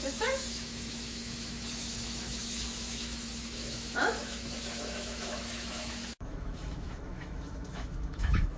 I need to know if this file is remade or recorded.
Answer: remade